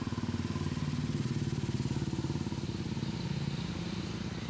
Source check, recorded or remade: recorded